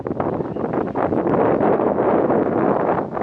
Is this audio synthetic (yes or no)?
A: no